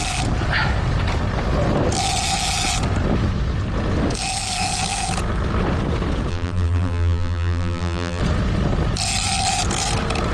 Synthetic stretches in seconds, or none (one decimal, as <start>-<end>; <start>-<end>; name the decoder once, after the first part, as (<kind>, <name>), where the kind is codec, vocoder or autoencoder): 6.3-8.2 (vocoder, BigVGAN v2)